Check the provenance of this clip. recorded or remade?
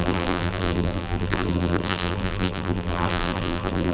remade